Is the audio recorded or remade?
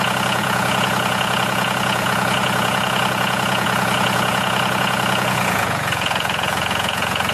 remade